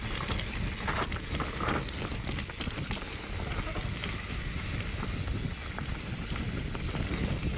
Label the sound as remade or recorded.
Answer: recorded